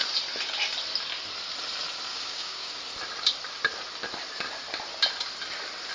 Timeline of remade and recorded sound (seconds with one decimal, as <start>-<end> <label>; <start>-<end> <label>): 0.0-2.1 recorded; 2.1-2.7 remade; 2.7-5.9 recorded